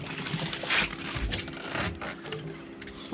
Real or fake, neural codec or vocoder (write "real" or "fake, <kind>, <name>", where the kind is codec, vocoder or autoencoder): real